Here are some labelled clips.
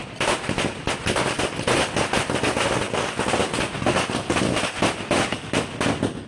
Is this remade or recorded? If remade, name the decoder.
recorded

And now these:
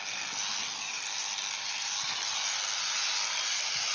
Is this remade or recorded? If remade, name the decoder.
recorded